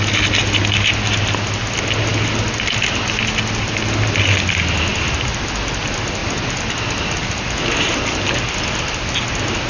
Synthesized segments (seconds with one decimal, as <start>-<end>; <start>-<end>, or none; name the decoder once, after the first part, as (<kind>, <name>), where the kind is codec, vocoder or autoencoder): none